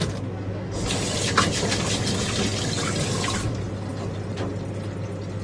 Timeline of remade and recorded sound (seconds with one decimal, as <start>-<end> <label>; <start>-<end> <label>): 0.0-5.4 recorded